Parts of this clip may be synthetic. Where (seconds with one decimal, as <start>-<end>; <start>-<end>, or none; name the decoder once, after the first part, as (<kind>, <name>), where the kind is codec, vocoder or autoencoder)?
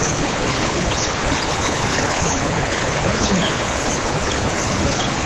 0.0-5.3 (codec, HILCodec)